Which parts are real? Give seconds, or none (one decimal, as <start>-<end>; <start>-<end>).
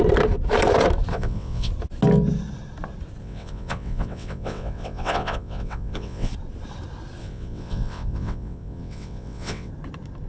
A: 0.0-1.1; 1.7-3.2; 6.3-7.2; 9.7-10.3